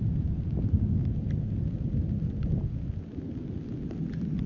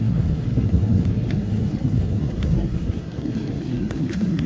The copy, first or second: second